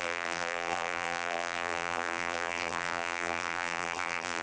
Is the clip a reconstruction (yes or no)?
yes